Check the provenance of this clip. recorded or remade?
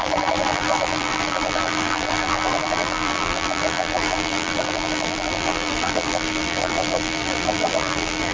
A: remade